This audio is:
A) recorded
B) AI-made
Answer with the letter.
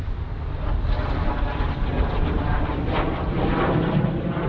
A